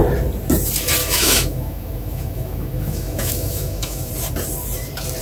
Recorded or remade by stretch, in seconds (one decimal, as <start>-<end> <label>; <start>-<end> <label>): 0.0-1.0 recorded; 1.0-4.1 remade; 4.1-5.2 recorded